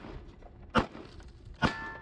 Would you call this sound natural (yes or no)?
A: yes